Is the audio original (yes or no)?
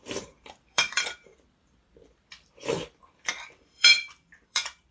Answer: no